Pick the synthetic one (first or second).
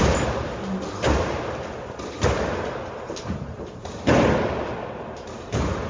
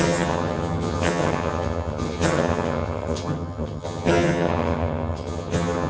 second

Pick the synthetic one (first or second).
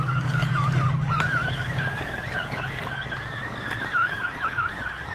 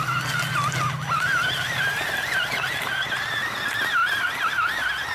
first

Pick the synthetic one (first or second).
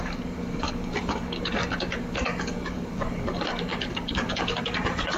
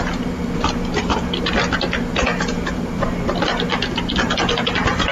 first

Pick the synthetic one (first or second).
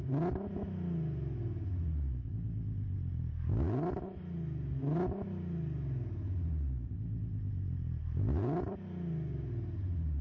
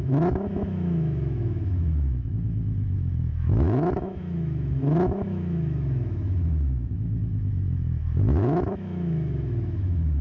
second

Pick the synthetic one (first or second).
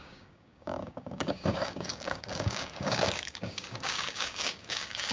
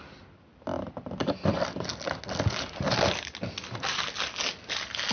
first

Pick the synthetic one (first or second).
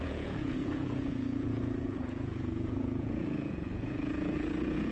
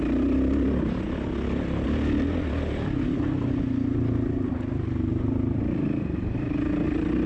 first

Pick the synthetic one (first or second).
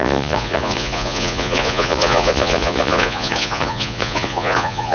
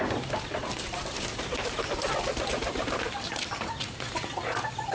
first